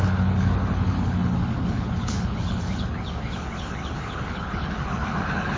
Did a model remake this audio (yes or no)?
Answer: yes